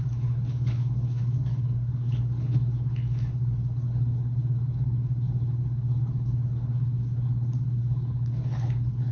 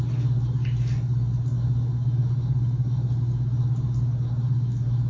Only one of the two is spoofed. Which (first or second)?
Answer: first